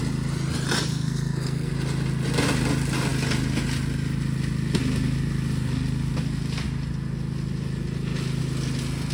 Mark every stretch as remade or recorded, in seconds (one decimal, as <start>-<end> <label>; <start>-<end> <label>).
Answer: 0.0-0.9 recorded; 0.9-1.7 remade; 1.7-9.1 recorded